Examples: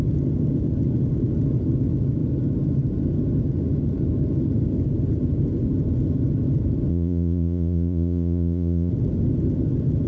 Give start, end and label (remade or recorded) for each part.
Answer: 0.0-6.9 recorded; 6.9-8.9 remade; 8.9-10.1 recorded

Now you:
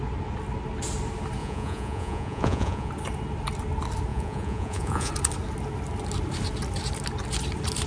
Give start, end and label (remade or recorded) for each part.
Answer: 0.0-1.4 recorded; 1.4-2.9 remade; 2.9-4.1 recorded; 4.1-5.1 remade; 5.1-7.9 recorded

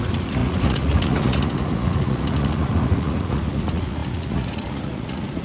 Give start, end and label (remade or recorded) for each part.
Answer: 0.0-5.4 remade

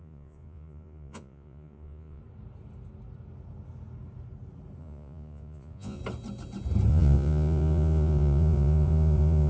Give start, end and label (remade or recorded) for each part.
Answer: 0.0-2.2 remade; 2.2-4.8 recorded; 4.8-6.0 remade; 6.0-6.9 recorded; 6.9-9.5 remade

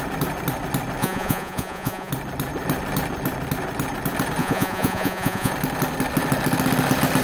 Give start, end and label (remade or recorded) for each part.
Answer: 0.0-1.0 recorded; 1.0-2.1 remade; 2.1-4.4 recorded; 4.4-5.5 remade; 5.5-7.2 recorded

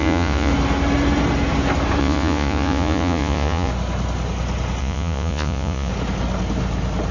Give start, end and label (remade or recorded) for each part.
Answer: 0.0-0.5 remade; 0.5-2.0 recorded; 2.0-3.7 remade; 3.7-4.8 recorded; 4.8-5.9 remade; 5.9-7.1 recorded

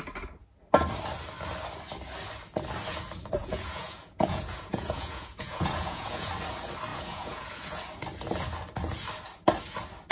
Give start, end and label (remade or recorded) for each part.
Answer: 0.0-3.4 recorded; 3.4-6.3 remade; 6.3-6.9 recorded; 6.9-7.8 remade; 7.8-10.1 recorded

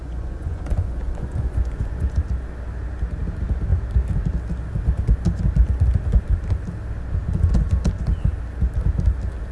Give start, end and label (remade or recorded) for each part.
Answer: 0.0-2.2 remade; 2.2-9.5 recorded